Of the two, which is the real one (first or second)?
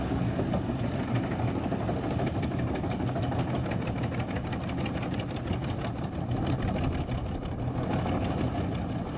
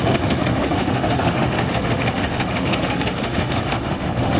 first